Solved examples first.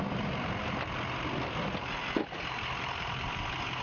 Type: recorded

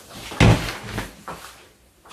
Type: recorded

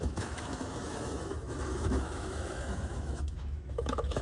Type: remade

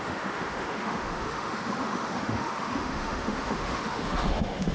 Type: remade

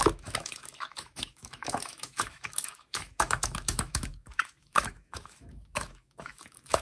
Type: remade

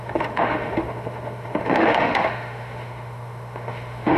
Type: remade